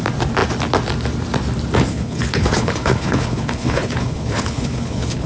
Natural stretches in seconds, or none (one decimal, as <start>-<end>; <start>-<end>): 0.0-1.9